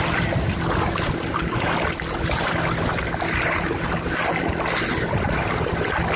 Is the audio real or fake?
real